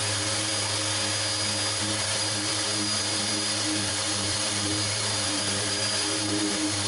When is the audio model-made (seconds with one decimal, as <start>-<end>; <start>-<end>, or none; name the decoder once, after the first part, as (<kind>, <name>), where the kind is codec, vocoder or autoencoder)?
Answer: 0.0-0.5 (vocoder, BigVGAN v2); 1.8-6.9